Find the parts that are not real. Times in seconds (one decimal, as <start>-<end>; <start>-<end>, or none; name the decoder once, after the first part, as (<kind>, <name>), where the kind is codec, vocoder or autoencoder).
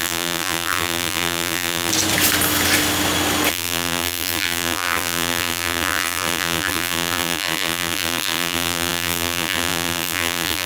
0.0-1.9 (vocoder, BigVGAN v2); 3.5-10.7